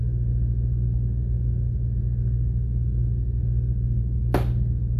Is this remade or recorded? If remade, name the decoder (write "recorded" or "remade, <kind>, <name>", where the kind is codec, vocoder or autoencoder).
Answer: recorded